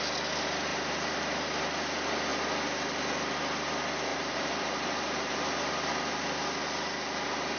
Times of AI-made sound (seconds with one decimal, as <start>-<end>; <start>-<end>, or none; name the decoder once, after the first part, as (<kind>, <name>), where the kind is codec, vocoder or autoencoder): 0.7-1.6 (vocoder, BigVGAN v2); 4.1-5.7